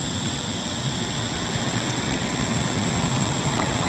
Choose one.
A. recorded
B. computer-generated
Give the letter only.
B